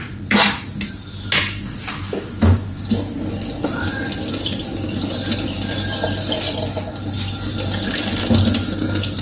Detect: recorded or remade recorded